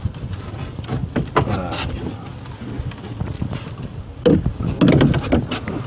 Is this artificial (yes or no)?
no